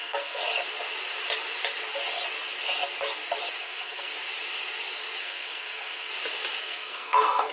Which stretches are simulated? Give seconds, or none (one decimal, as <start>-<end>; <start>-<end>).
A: 0.0-0.4; 3.6-4.1; 5.2-6.1; 6.6-7.5